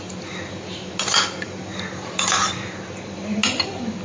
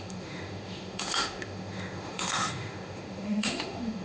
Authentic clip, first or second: first